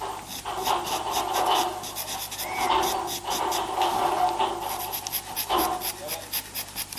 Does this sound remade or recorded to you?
recorded